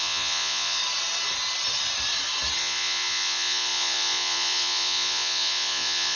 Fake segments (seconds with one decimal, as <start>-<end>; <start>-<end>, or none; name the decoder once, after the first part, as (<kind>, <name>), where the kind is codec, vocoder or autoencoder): 0.0-0.8 (vocoder, Vocos); 2.6-6.2